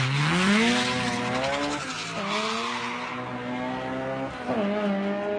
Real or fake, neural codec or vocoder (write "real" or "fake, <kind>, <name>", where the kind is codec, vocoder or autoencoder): real